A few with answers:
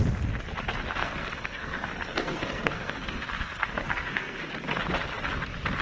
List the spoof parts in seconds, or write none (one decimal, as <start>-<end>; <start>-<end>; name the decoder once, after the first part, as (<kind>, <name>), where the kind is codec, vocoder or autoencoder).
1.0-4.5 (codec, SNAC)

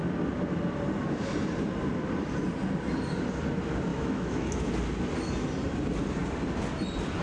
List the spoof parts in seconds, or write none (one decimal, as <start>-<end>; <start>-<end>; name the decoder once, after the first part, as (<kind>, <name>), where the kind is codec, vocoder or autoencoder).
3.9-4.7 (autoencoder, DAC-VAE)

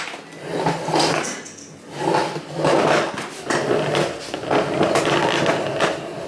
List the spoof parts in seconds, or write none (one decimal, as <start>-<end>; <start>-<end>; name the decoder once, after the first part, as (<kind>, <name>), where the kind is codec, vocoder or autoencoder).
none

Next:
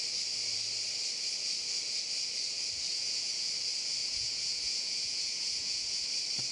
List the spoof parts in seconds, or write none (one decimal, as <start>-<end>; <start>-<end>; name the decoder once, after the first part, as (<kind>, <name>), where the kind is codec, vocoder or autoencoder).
2.9-3.5 (vocoder, Vocos); 4.0-6.0

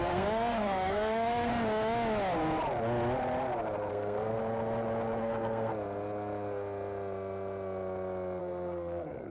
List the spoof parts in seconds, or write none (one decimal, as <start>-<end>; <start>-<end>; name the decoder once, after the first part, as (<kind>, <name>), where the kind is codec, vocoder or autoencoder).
0.0-1.5 (codec, SNAC); 3.9-4.4; 5.2-5.7; 8.4-9.3

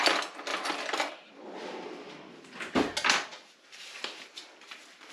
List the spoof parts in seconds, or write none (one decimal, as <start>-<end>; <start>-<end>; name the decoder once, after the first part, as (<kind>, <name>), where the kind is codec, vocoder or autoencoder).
none

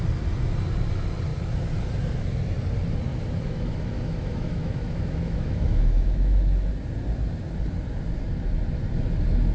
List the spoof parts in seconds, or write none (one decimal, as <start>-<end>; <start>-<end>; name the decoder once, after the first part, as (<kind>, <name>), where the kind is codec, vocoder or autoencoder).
3.1-6.7 (autoencoder, DAC-VAE)